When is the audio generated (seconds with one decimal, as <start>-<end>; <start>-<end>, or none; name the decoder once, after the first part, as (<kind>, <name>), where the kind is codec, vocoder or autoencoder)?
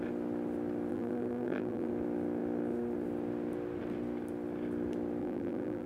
0.9-1.9 (vocoder, BigVGAN v2); 5.2-5.9